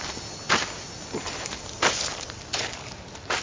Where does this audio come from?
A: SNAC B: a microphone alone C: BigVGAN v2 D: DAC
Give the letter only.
B